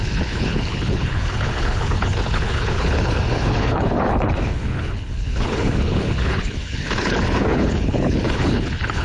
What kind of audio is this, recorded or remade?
remade